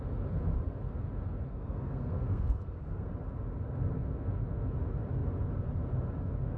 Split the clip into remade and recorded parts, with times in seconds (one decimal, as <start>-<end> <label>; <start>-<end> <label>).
0.0-1.5 recorded; 1.5-3.1 remade; 3.1-6.6 recorded